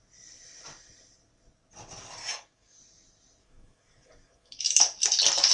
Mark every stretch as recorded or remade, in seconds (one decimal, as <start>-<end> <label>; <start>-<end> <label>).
0.0-2.2 recorded; 2.2-2.8 remade; 2.8-3.4 recorded; 3.4-4.8 remade; 4.8-5.5 recorded